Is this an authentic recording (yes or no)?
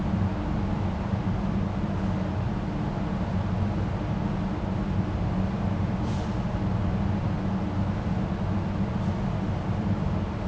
yes